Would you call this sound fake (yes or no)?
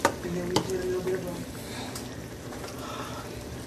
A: no